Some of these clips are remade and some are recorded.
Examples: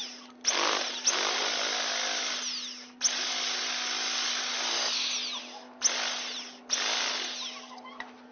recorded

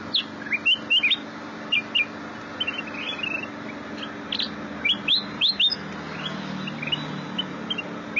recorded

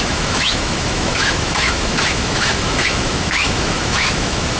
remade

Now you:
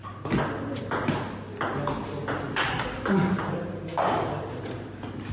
recorded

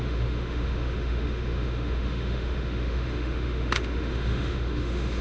remade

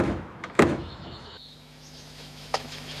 remade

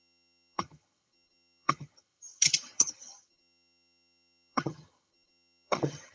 remade